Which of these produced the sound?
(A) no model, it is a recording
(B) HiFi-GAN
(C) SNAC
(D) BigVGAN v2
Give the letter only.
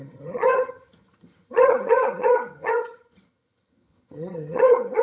B